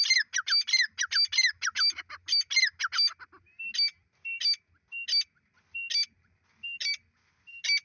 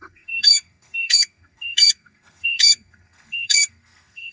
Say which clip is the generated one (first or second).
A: second